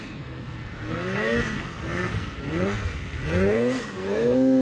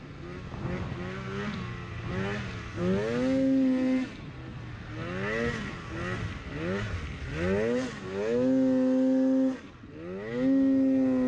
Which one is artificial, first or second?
first